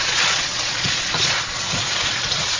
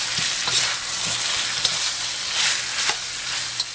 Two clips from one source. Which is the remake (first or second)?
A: first